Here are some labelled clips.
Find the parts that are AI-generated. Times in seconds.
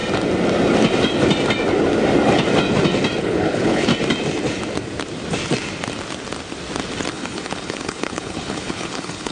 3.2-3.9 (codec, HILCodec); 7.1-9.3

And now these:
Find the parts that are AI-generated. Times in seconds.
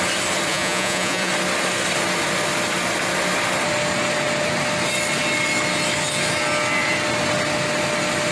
0.5-1.3 (vocoder, Vocos)